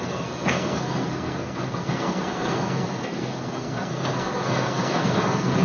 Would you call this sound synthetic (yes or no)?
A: yes